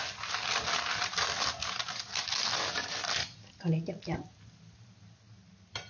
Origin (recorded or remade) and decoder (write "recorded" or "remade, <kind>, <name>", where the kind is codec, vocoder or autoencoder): recorded